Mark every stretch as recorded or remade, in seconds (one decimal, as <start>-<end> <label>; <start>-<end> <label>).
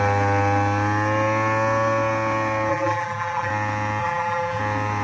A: 0.0-2.7 recorded; 2.7-3.5 remade; 3.5-4.0 recorded; 4.0-4.6 remade; 4.6-5.0 recorded